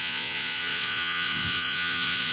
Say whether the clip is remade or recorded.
remade